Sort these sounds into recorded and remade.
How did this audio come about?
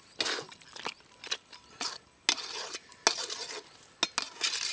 recorded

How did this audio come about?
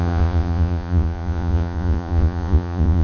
remade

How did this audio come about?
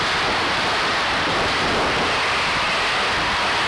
remade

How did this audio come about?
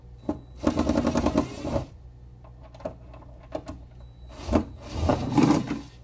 recorded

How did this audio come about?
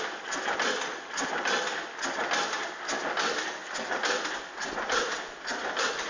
recorded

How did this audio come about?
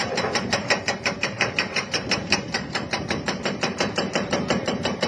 remade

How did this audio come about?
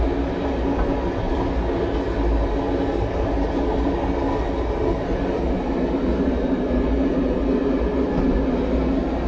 recorded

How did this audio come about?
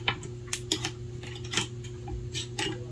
recorded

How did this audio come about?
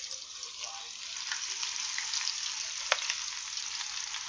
recorded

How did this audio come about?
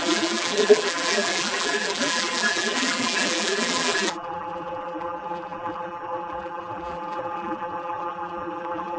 remade